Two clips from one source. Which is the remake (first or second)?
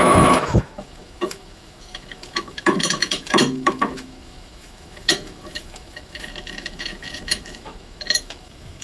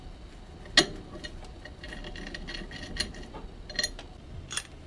first